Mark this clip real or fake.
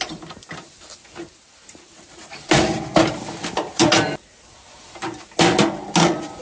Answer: real